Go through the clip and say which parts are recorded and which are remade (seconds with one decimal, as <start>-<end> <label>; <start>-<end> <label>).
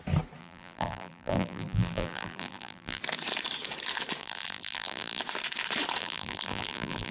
0.0-0.4 recorded; 0.4-3.0 remade; 3.0-4.2 recorded; 4.2-5.2 remade; 5.2-6.0 recorded; 6.0-7.1 remade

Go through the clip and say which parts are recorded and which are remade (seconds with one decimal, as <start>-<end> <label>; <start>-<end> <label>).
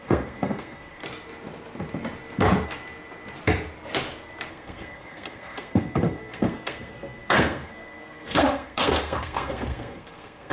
0.0-1.0 remade; 1.0-4.5 recorded; 4.5-10.5 remade